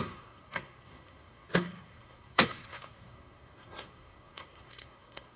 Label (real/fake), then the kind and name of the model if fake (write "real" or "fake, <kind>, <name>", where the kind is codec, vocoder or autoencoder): fake, codec, SNAC